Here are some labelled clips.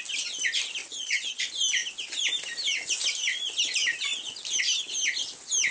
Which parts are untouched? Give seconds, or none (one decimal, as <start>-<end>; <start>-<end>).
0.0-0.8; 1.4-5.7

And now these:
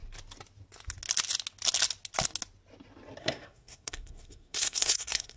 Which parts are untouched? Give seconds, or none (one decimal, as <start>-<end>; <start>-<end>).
0.0-3.2

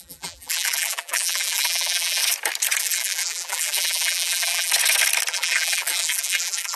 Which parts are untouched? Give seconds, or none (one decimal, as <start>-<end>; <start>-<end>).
2.2-2.8; 4.7-5.3

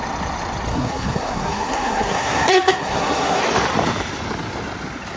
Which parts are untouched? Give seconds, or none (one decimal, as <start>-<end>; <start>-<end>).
0.0-0.7; 3.4-5.2